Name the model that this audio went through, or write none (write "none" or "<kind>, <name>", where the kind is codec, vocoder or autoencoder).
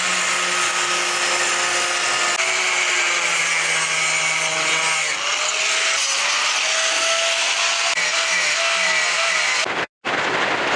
none